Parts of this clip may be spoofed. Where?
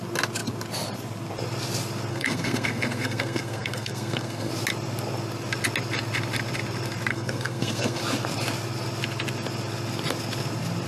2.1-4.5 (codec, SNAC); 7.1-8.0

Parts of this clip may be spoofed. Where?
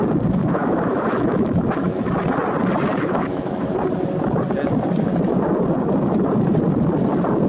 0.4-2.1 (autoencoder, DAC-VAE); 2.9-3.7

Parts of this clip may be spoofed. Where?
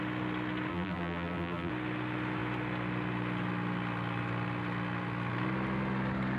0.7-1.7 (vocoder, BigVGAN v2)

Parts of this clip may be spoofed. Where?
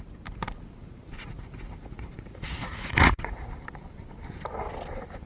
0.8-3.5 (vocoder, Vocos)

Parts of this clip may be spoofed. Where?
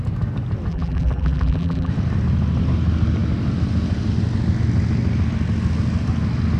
0.7-1.9 (vocoder, BigVGAN v2)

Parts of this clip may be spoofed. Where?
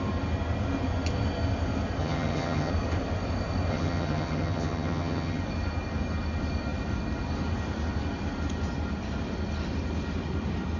2.0-2.7 (vocoder, HiFi-GAN); 3.7-5.4